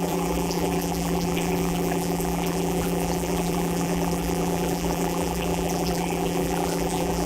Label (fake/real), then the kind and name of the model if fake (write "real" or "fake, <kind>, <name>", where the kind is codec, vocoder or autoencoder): fake, vocoder, BigVGAN v2